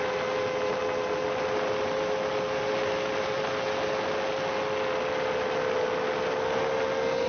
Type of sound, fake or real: real